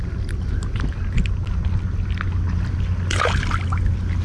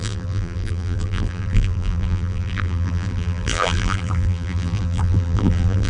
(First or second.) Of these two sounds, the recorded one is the first